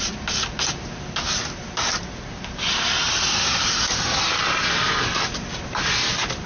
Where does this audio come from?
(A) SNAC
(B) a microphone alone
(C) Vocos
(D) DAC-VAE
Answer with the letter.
B